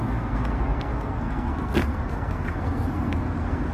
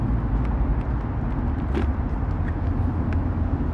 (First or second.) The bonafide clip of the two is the second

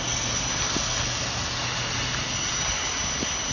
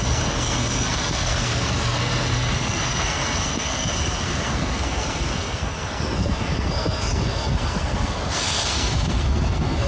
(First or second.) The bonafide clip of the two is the first